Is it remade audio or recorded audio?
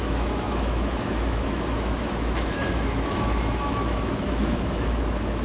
remade